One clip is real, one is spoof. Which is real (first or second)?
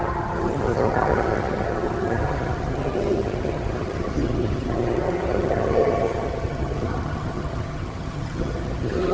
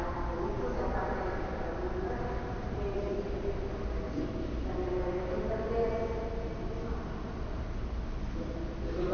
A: second